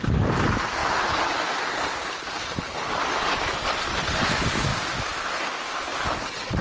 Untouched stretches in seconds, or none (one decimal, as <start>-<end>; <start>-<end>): 0.0-6.6